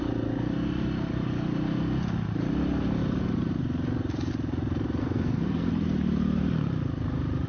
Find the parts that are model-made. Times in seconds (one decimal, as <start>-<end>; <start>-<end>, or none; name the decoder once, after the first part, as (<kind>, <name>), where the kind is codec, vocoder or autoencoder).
5.0-5.7 (codec, SNAC)